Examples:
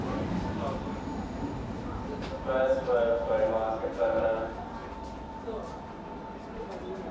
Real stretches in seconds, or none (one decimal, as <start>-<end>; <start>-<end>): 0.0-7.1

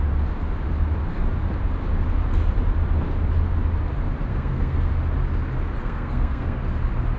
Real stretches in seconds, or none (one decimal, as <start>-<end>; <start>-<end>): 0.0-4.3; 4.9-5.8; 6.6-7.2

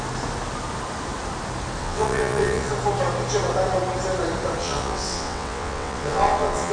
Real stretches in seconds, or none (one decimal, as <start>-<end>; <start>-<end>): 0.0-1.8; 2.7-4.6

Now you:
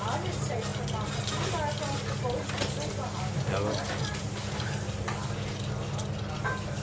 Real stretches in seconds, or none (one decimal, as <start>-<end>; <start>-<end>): 0.0-6.8

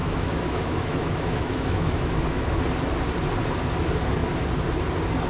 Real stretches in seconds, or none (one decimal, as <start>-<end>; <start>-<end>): 2.6-5.3

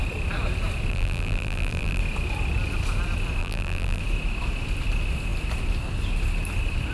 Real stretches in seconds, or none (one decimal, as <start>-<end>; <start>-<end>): 0.0-0.9; 2.0-3.4; 4.0-6.9

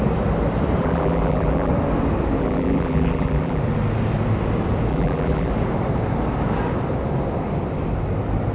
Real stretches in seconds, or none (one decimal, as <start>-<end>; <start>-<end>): 0.0-0.8; 1.7-2.4; 3.6-4.9; 5.5-8.5

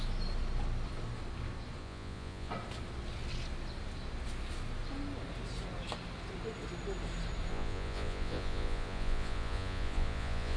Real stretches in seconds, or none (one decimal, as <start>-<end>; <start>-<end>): 0.0-1.8; 2.5-7.5